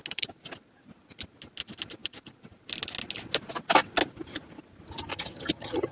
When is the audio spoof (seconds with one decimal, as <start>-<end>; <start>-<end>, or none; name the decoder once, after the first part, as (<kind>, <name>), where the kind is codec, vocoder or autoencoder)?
5.1-5.9 (vocoder, HiFi-GAN)